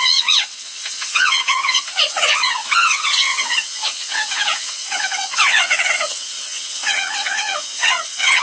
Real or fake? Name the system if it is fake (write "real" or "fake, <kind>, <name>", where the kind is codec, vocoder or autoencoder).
fake, vocoder, WaveNeXt